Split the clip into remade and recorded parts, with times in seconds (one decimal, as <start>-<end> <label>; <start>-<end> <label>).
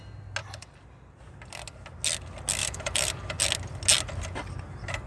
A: 0.0-0.4 recorded; 0.4-1.2 remade; 1.2-2.6 recorded; 2.6-3.4 remade; 3.4-5.1 recorded